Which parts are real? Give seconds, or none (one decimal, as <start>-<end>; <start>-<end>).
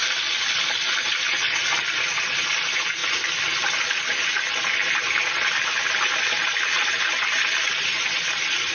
0.0-8.7